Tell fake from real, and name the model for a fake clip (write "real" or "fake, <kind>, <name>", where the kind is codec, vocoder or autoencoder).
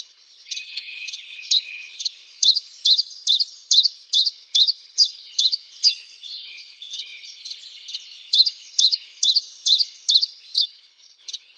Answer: fake, codec, HILCodec